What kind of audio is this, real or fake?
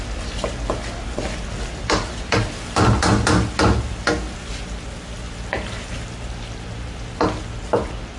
real